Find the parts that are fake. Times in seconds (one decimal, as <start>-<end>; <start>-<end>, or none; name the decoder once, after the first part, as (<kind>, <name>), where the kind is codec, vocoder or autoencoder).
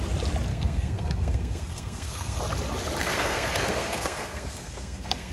0.5-2.4 (codec, SNAC); 3.0-5.3